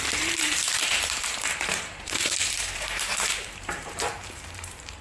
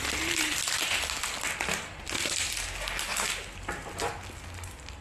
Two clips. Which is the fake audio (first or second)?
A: first